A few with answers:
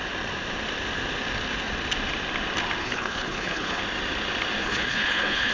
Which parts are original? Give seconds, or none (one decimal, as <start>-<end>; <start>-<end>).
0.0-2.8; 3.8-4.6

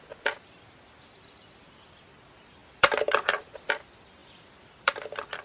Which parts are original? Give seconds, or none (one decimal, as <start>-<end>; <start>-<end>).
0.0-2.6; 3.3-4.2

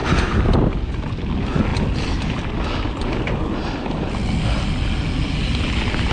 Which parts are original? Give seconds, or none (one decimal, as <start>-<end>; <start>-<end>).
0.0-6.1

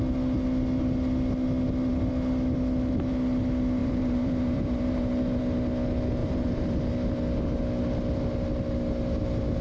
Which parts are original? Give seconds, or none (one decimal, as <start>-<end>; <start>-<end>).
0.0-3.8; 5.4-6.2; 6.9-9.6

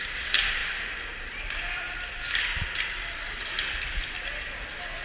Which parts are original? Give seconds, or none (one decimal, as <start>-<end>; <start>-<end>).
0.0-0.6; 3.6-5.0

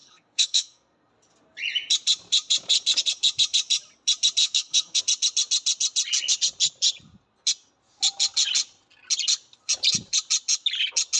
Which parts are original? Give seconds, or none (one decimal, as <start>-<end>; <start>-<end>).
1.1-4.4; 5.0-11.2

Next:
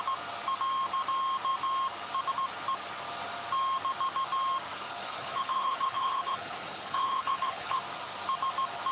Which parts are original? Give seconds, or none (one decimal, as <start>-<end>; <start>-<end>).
0.0-5.0; 7.8-8.9